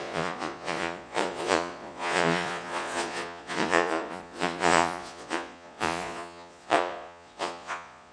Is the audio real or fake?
fake